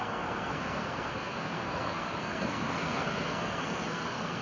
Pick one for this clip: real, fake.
fake